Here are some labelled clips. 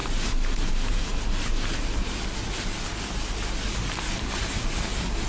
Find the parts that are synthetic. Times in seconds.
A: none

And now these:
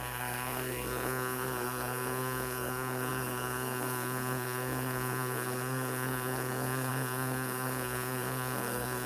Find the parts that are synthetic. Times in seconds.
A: 0.0-9.1 (codec, SNAC)

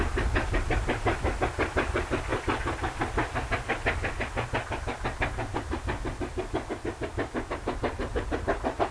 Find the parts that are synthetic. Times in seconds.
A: none

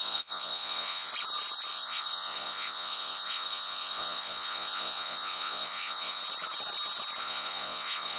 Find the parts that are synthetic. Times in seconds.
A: 0.0-1.1 (vocoder, Vocos); 1.7-6.2; 7.2-8.2